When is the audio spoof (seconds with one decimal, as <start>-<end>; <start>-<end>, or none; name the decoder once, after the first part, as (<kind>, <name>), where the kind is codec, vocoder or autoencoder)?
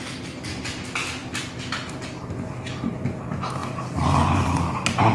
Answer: none